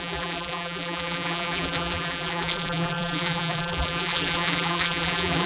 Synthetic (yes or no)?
yes